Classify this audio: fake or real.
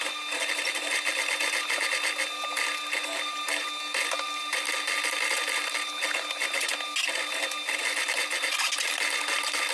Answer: real